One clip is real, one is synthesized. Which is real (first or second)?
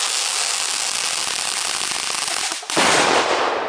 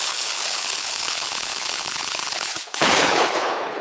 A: first